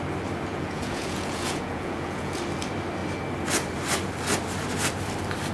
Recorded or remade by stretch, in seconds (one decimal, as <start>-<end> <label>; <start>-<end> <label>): 0.0-0.5 recorded; 0.5-2.4 remade; 2.4-5.5 recorded